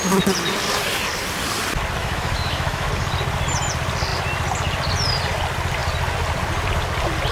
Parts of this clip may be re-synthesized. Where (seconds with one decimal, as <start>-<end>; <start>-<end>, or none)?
2.0-2.9